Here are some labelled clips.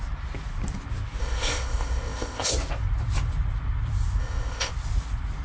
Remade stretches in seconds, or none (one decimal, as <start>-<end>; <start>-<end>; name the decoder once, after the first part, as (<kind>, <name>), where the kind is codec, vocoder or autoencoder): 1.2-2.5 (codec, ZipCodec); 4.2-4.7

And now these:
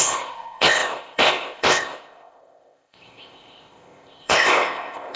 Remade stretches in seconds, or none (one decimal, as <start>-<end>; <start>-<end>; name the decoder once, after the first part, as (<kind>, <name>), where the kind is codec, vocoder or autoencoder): 0.0-5.2 (codec, ZipCodec)

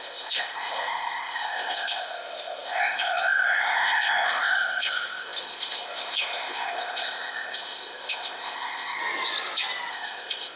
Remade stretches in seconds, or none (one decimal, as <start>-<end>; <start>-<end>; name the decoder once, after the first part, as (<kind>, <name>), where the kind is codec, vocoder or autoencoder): 0.0-9.0 (codec, ZipCodec); 9.9-10.6

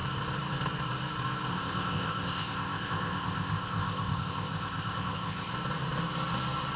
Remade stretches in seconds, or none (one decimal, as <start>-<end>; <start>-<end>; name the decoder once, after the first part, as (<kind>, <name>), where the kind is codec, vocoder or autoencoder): 1.5-5.5 (codec, ZipCodec)

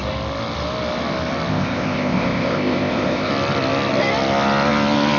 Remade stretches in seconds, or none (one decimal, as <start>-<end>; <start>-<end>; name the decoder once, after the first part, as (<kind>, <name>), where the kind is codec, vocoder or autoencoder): 1.5-3.3 (codec, ZipCodec)

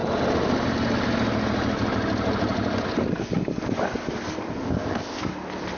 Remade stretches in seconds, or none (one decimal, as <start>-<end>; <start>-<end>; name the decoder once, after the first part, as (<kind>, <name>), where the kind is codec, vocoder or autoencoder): 4.6-5.2 (codec, ZipCodec)

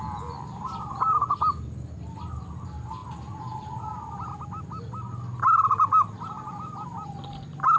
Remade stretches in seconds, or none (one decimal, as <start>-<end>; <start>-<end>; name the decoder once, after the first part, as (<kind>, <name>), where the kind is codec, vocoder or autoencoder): none

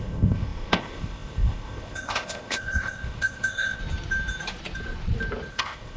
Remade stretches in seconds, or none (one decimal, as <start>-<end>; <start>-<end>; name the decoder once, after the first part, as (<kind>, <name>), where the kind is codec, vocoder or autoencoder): 0.0-3.8 (codec, ZipCodec); 5.5-6.0